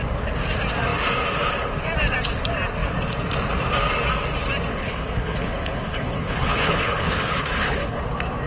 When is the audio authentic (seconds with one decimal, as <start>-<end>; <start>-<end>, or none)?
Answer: 0.0-4.7; 8.0-8.5